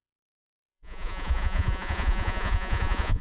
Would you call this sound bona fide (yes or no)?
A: no